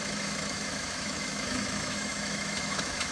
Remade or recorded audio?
remade